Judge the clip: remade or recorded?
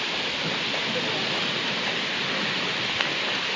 recorded